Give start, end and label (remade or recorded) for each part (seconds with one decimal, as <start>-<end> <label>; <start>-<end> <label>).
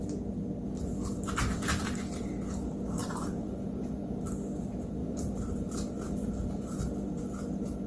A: 0.0-3.0 recorded; 3.0-4.0 remade; 4.0-5.0 recorded; 5.0-6.8 remade; 6.8-7.9 recorded